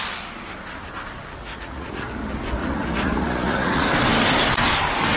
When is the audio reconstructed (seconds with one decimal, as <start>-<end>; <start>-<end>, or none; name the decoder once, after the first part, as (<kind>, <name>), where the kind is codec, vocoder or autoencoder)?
1.4-2.0 (vocoder, Vocos); 2.6-3.9